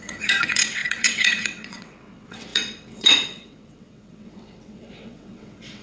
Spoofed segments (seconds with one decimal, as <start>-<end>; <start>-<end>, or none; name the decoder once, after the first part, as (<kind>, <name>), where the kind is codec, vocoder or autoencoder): 0.0-5.8 (vocoder, WaveNeXt)